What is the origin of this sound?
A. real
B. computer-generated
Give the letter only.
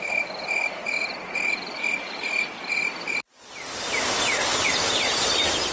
A